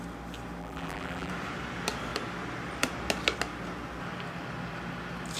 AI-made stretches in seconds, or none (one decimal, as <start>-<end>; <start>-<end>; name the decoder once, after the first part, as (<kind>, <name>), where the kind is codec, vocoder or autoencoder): 0.6-1.3 (vocoder, BigVGAN v2)